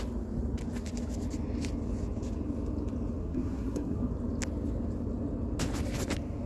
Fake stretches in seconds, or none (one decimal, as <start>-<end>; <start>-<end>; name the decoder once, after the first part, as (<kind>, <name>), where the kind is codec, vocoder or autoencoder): 3.2-4.1 (codec, SNAC)